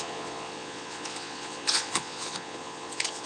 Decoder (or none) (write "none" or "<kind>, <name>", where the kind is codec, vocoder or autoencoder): vocoder, Vocos